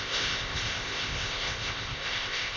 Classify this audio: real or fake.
fake